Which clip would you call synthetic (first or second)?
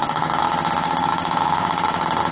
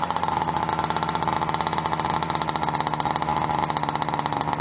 first